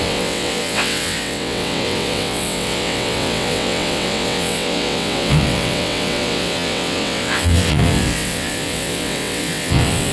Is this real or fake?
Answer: fake